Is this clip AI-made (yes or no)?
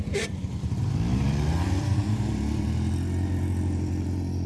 yes